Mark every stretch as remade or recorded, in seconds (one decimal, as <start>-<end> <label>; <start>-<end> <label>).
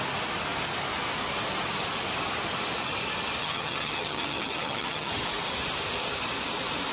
0.0-3.4 recorded; 3.4-5.1 remade; 5.1-6.9 recorded